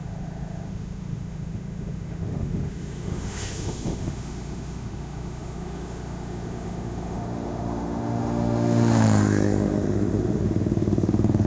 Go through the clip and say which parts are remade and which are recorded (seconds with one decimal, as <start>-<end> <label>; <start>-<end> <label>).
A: 0.0-11.5 remade